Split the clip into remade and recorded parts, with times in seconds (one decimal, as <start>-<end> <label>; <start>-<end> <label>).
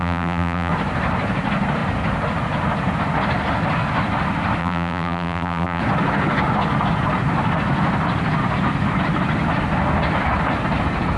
0.0-0.7 remade; 0.7-4.6 recorded; 4.6-5.8 remade; 5.8-11.2 recorded